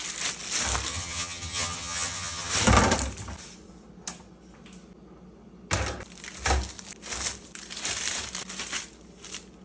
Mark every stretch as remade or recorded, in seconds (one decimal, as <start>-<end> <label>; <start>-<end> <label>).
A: 0.0-0.9 recorded; 0.9-2.5 remade; 2.5-9.6 recorded